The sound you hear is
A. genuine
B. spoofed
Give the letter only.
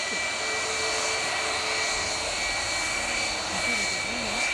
A